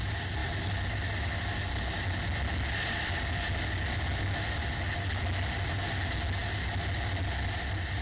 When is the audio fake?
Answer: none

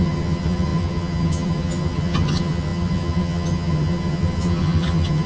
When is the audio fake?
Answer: 0.0-5.3 (vocoder, HiFi-GAN)